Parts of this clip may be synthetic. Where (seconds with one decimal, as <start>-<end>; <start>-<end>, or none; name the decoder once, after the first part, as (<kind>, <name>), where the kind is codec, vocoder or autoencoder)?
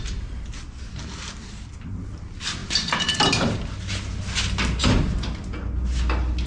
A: 2.6-4.2 (vocoder, BigVGAN v2)